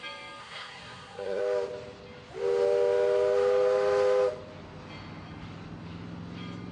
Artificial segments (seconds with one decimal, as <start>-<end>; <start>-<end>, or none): 0.4-1.4